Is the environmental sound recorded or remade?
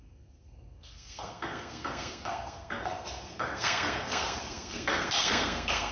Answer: remade